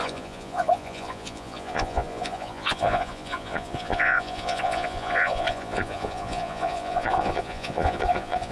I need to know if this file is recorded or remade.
remade